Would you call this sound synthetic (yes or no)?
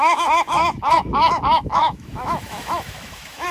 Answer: yes